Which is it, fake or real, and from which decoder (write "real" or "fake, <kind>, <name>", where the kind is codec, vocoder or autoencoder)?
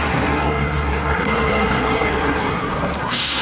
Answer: fake, codec, SNAC